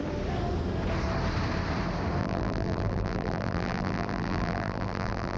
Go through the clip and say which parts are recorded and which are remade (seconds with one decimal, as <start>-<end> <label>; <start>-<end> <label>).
0.0-2.2 recorded; 2.2-5.4 remade